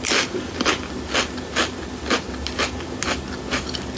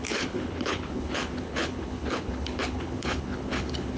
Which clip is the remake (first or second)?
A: second